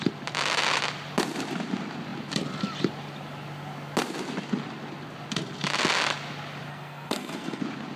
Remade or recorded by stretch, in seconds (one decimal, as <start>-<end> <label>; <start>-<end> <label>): 0.0-6.7 recorded; 6.7-7.6 remade; 7.6-8.0 recorded